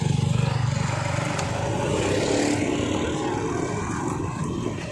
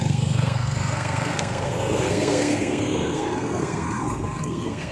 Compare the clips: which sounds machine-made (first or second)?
second